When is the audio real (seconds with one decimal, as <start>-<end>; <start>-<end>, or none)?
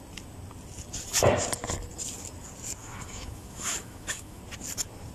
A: 0.0-2.8; 4.4-5.1